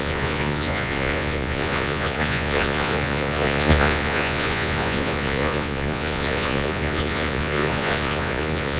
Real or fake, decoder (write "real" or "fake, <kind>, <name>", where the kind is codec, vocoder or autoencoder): fake, vocoder, Vocos